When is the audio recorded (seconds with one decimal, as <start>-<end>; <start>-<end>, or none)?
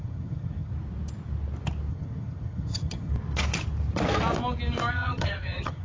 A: 0.7-1.9; 3.1-4.9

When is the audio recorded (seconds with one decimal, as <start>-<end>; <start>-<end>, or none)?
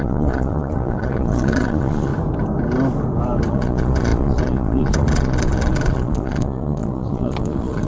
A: 2.1-3.5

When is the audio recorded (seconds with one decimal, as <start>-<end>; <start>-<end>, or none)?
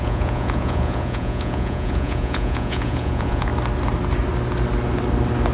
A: 3.5-5.5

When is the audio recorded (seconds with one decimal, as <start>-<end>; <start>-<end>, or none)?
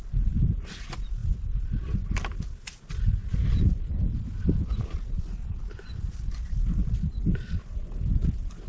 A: 0.0-3.2; 6.3-8.7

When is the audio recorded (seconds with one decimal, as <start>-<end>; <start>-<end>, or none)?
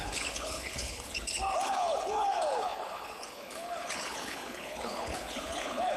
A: none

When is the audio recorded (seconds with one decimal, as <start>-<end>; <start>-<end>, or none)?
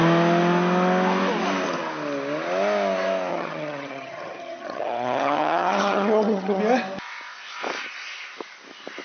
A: 0.0-3.3; 6.6-9.0